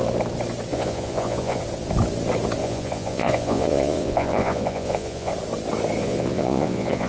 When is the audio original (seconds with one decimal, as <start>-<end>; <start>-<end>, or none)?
0.0-0.7; 1.6-2.6; 5.3-6.0